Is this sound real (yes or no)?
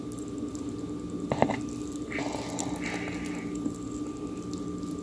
yes